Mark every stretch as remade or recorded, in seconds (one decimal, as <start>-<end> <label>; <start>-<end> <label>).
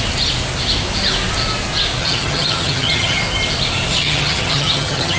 0.0-2.0 recorded; 2.0-3.2 remade; 3.2-4.0 recorded; 4.0-5.2 remade